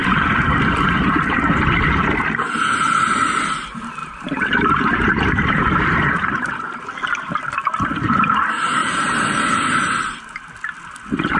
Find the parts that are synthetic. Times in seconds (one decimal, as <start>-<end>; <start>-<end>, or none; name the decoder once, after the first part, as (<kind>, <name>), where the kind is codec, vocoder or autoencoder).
0.0-1.8 (vocoder, BigVGAN v2); 4.0-6.8; 8.8-9.4